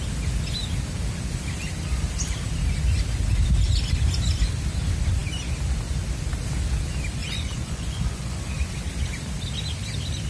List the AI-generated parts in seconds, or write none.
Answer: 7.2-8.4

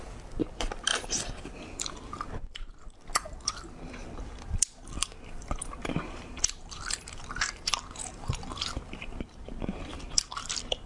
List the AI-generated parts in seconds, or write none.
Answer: 0.0-0.9; 2.1-9.9; 10.4-10.9

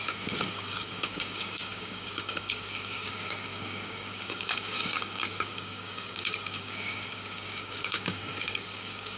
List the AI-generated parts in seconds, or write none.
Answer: 0.0-9.2

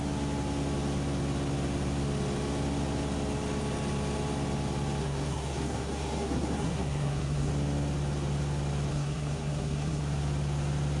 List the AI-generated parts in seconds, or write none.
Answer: 5.0-7.5; 8.9-10.0

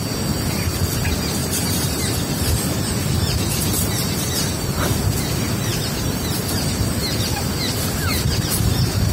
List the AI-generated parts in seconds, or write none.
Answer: 1.4-2.0; 5.7-6.4

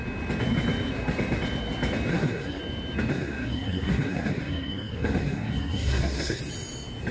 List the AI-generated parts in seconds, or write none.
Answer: 2.1-2.6; 3.1-6.4

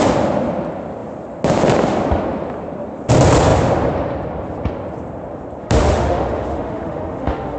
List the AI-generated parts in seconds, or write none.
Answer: 5.6-7.6